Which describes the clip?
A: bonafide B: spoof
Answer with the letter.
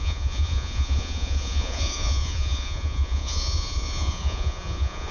B